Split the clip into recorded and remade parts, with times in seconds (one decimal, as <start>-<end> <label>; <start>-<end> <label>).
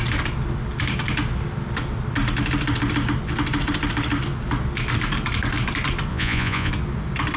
0.0-6.1 recorded; 6.1-6.7 remade; 6.7-7.4 recorded